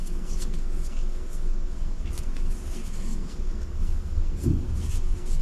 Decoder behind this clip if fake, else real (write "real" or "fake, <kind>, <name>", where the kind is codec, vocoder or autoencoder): fake, codec, SNAC